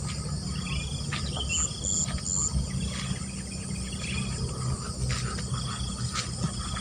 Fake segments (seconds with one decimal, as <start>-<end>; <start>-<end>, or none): none